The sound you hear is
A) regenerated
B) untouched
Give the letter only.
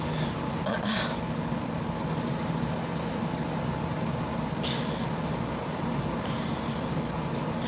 B